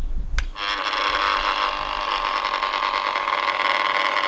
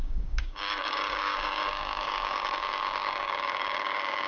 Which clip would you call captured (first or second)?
first